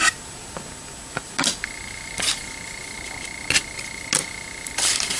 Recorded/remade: recorded